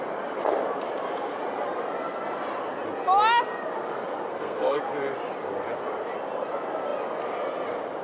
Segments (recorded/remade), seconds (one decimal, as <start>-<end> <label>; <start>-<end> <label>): 0.0-4.3 recorded; 4.3-4.8 remade; 4.8-8.0 recorded